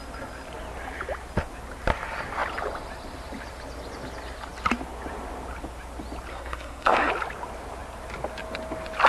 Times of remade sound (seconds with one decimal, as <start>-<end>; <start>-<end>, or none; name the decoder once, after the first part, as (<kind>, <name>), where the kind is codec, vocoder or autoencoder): 6.3-7.1 (codec, SNAC)